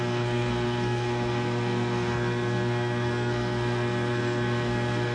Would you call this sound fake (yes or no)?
yes